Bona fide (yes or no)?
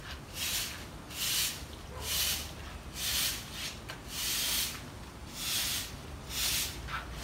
yes